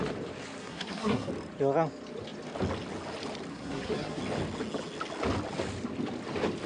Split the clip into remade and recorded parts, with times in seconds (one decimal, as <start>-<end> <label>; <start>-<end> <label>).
0.0-0.6 recorded; 0.6-1.3 remade; 1.3-3.5 recorded; 3.5-4.2 remade; 4.2-6.7 recorded

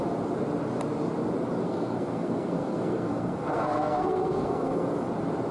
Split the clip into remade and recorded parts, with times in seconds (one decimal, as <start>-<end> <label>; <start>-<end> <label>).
0.0-1.6 recorded; 1.6-4.9 remade; 4.9-5.5 recorded

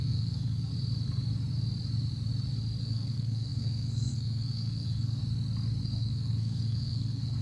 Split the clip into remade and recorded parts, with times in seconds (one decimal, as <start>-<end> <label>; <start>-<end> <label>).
0.0-0.7 remade; 0.7-2.8 recorded; 2.8-5.2 remade; 5.2-5.8 recorded; 5.8-7.4 remade

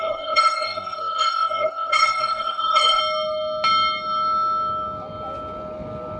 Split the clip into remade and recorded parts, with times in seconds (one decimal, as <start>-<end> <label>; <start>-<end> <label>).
0.0-3.0 remade; 3.0-6.2 recorded

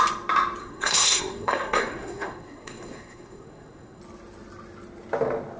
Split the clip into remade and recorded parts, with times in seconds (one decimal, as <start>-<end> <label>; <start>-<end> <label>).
0.0-0.6 recorded; 0.6-4.0 remade; 4.0-5.6 recorded

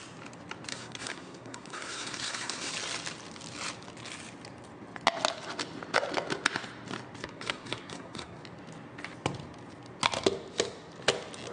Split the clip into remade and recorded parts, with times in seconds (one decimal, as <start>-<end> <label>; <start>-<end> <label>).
0.0-0.7 recorded; 0.7-2.7 remade; 2.7-7.2 recorded; 7.2-8.4 remade; 8.4-11.5 recorded